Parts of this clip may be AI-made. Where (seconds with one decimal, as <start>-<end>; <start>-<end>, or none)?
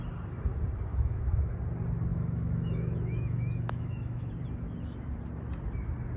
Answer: 0.9-1.5; 2.1-4.3